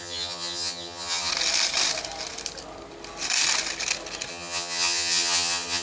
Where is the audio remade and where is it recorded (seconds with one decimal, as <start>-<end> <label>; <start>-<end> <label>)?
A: 0.0-1.3 remade; 1.3-4.3 recorded; 4.3-5.8 remade